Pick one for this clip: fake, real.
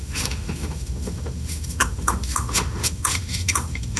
fake